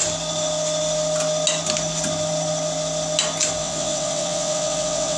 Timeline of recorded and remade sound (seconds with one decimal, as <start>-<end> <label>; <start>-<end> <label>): 0.0-3.6 recorded; 3.6-5.2 remade